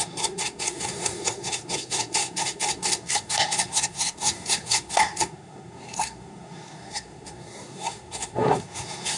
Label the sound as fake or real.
fake